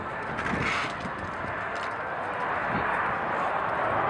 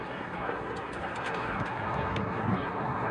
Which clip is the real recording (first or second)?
first